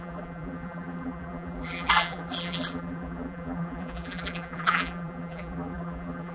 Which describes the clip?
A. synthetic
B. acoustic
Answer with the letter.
A